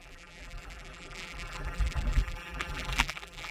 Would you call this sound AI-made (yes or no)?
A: yes